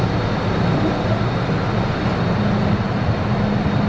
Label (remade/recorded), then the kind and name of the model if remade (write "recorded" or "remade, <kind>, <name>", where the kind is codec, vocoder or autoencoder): recorded